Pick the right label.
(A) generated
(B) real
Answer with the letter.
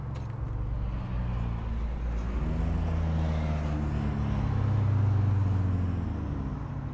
B